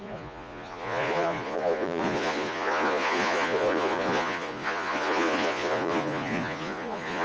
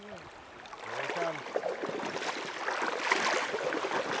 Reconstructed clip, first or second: first